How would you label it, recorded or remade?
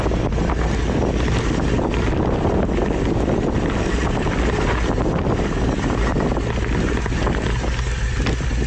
recorded